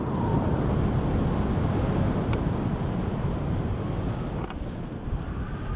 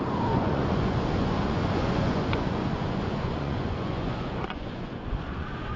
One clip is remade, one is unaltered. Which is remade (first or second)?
second